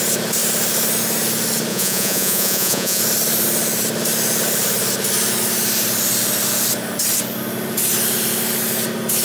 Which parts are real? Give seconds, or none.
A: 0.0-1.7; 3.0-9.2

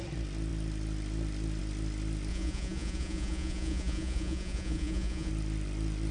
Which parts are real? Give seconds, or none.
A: 0.0-2.3; 5.3-6.1

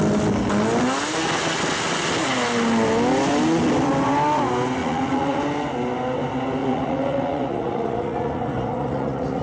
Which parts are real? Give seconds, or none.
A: 0.0-4.8; 5.4-6.6

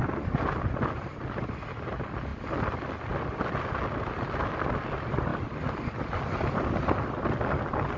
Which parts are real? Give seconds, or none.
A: 0.0-8.0

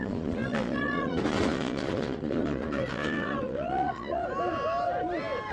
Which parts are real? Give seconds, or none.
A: 4.2-5.5